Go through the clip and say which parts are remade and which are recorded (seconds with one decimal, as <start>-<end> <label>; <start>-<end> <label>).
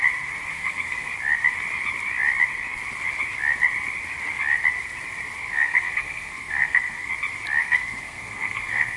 0.0-0.5 recorded; 0.5-1.1 remade; 1.1-5.5 recorded; 5.5-7.1 remade; 7.1-7.6 recorded; 7.6-9.0 remade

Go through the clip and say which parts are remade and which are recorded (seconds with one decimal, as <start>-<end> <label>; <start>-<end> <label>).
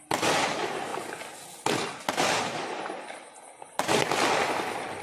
0.0-5.0 recorded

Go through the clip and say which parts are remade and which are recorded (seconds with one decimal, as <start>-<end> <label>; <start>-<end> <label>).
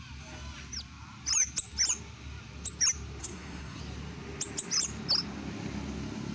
0.0-3.2 recorded; 3.2-3.8 remade; 3.8-6.3 recorded